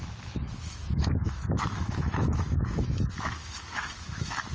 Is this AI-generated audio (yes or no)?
yes